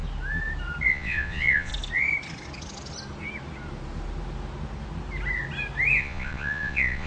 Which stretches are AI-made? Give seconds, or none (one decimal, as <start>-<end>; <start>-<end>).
0.9-1.7; 6.0-7.1